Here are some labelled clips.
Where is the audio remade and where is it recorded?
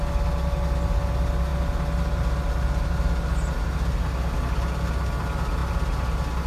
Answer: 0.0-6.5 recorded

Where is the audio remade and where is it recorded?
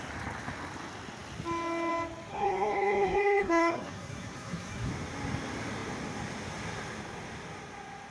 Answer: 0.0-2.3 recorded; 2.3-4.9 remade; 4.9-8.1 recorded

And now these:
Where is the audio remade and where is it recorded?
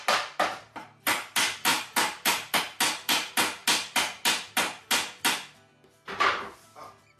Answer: 0.0-7.2 recorded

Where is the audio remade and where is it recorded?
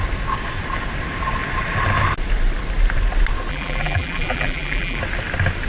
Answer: 0.0-3.5 recorded; 3.5-5.0 remade; 5.0-5.7 recorded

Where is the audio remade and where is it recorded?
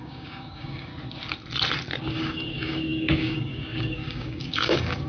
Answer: 0.0-0.9 remade; 0.9-2.0 recorded; 2.0-5.1 remade